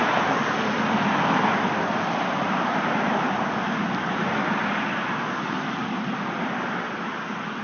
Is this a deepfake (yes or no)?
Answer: no